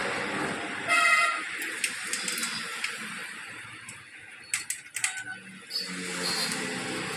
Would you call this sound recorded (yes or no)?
yes